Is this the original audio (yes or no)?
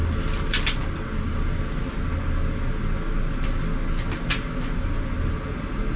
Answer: yes